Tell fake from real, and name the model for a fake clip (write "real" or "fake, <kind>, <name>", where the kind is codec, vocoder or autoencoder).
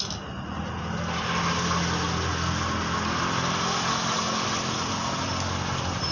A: real